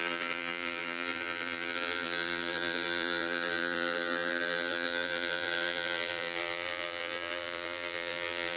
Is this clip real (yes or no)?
no